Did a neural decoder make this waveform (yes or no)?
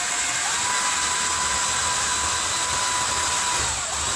no